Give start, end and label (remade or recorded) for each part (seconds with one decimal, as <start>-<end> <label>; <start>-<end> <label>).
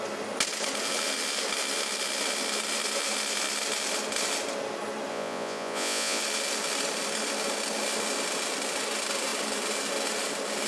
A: 0.0-5.1 recorded; 5.1-6.2 remade; 6.2-10.7 recorded